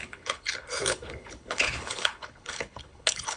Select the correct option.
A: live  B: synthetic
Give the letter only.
B